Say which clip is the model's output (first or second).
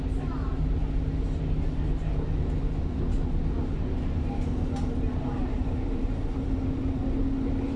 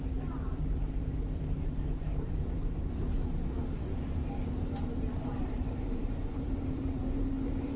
second